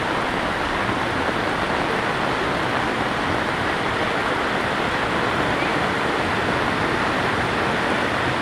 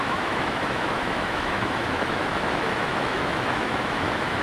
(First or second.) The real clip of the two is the first